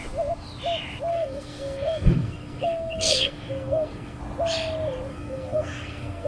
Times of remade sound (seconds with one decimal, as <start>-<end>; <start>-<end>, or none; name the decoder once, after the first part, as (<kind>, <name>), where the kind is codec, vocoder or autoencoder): 1.1-4.2 (codec, SNAC); 5.1-6.3